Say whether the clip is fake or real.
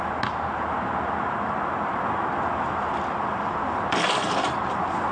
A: real